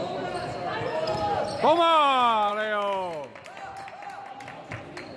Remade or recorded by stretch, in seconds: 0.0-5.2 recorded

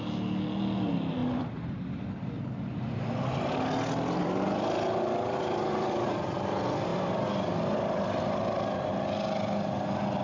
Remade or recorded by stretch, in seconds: 0.0-1.2 recorded; 1.2-3.0 remade; 3.0-4.2 recorded; 4.2-6.1 remade; 6.1-6.9 recorded; 6.9-8.9 remade; 8.9-10.2 recorded

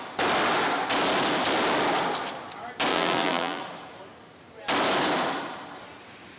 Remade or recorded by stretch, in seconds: 0.0-2.9 recorded; 2.9-3.6 remade; 3.6-6.4 recorded

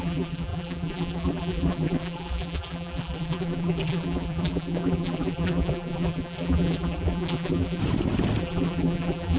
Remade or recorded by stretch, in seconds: 0.0-7.8 remade; 7.8-8.4 recorded; 8.4-9.4 remade

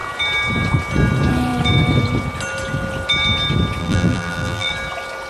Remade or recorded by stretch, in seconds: 0.0-3.8 recorded; 3.8-4.7 remade; 4.7-5.3 recorded

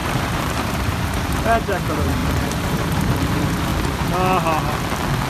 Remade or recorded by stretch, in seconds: 0.0-3.7 remade; 3.7-5.3 recorded

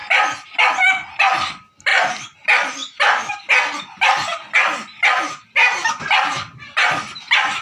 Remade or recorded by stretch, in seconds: 0.0-7.6 recorded